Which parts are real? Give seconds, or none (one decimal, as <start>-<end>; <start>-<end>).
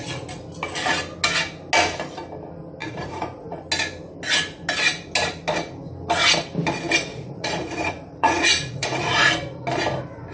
0.0-2.8; 3.6-7.1; 9.3-10.3